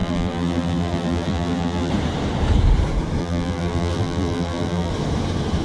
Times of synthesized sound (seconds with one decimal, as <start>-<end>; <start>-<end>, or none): 0.0-1.9; 3.2-4.9